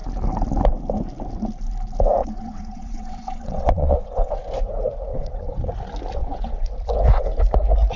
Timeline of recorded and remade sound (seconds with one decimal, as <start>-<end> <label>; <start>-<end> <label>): 0.0-2.2 recorded; 2.2-4.4 remade; 4.4-5.1 recorded; 5.1-5.7 remade; 5.7-6.2 recorded; 6.2-6.7 remade; 6.7-8.0 recorded